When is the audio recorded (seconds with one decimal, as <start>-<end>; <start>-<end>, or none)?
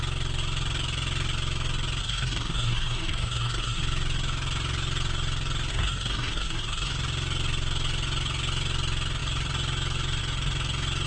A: 0.0-2.0; 3.8-5.7; 6.9-11.1